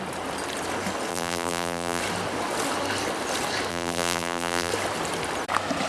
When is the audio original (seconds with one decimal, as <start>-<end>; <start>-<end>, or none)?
0.0-1.1; 2.0-3.7; 4.7-5.9

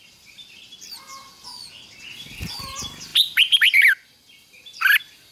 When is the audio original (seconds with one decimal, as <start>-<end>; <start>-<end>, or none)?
none

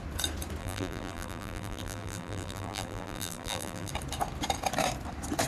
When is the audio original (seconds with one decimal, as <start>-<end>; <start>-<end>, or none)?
0.0-0.6; 3.9-5.5

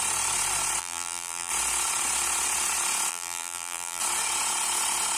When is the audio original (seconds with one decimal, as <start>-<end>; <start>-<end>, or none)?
0.0-0.8; 1.5-3.1; 4.0-5.2

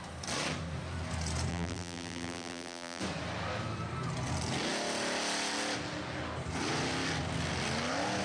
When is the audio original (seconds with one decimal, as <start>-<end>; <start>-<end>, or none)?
0.0-1.5; 3.0-8.2

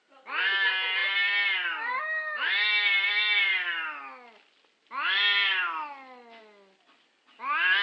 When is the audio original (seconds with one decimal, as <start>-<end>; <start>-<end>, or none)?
0.0-7.8